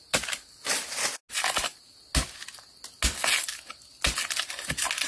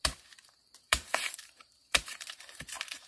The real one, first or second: first